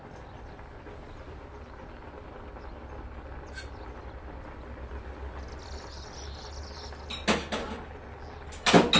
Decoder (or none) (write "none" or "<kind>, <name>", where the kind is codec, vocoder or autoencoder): none